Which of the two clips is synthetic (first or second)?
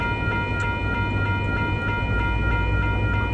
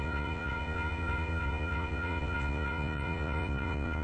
second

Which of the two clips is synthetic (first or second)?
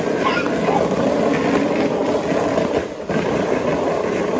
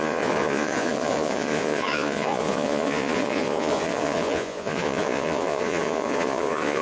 second